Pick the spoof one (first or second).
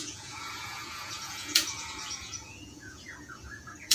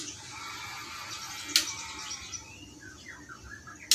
first